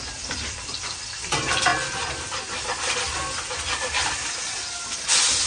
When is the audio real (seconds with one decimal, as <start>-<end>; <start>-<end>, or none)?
0.0-5.5